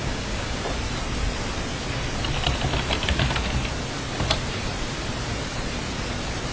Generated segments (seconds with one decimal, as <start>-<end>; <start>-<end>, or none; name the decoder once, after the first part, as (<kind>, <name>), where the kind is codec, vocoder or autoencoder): 0.0-0.6 (codec, DAC)